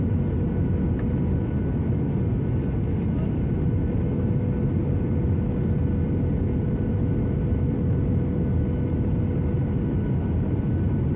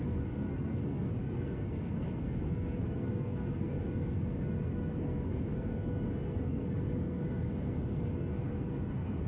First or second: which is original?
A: first